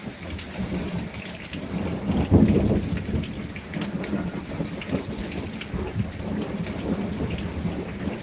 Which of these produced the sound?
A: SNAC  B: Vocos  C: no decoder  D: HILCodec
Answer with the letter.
C